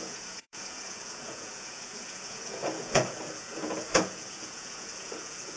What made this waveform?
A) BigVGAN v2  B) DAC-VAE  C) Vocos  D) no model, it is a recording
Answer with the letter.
C